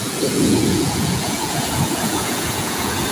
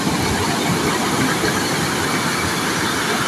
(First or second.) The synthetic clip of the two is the first